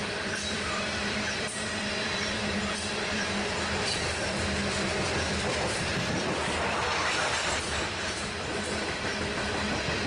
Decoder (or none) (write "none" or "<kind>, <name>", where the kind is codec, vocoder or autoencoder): vocoder, BigVGAN v2